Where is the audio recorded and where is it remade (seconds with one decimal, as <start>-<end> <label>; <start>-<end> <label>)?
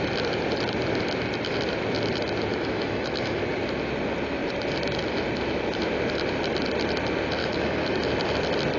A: 0.0-2.5 recorded; 2.5-3.4 remade; 3.4-7.4 recorded; 7.4-8.1 remade; 8.1-8.8 recorded